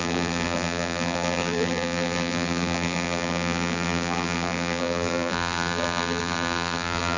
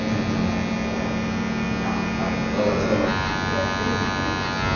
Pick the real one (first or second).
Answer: second